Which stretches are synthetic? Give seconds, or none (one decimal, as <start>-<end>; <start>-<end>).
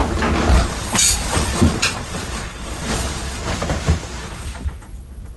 0.5-3.4; 4.2-5.4